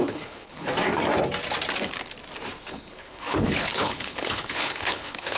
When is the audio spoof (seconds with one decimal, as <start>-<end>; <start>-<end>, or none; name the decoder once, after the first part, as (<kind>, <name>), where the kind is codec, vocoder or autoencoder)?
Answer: 0.0-0.7 (codec, HILCodec); 2.9-5.4